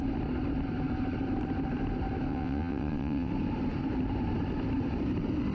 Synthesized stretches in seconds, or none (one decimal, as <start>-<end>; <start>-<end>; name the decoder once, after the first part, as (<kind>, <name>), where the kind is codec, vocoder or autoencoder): 2.3-3.3 (vocoder, WaveNeXt)